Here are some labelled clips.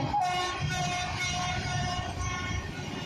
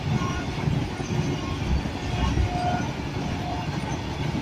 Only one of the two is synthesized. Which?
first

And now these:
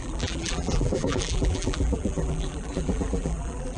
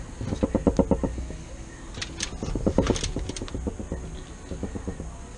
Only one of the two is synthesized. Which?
first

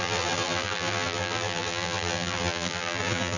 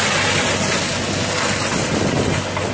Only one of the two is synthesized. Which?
first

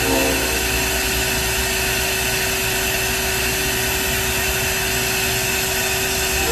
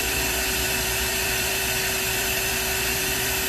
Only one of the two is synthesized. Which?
second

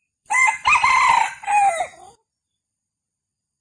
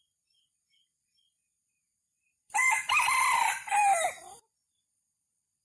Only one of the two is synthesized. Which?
second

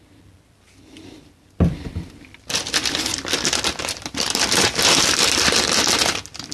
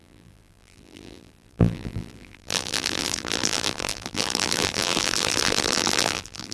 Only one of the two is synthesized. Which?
second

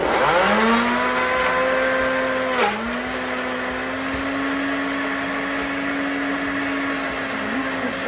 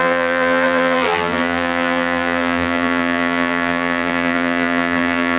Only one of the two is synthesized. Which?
second